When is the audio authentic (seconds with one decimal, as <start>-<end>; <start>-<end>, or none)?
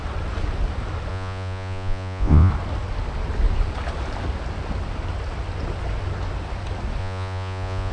0.0-1.1; 2.5-7.0